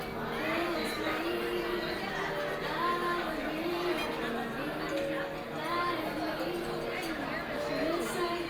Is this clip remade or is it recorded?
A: recorded